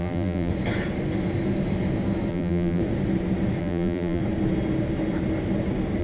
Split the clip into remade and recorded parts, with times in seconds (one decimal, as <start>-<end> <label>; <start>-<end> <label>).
0.0-0.5 remade; 0.5-2.3 recorded; 2.3-2.8 remade; 2.8-3.6 recorded; 3.6-4.2 remade; 4.2-6.0 recorded